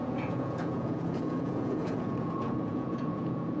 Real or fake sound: fake